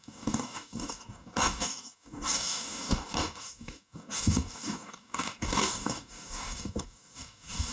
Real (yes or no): no